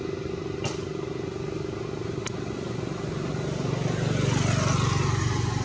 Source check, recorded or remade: recorded